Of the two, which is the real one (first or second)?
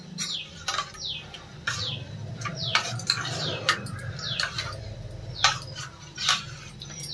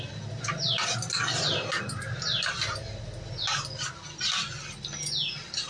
second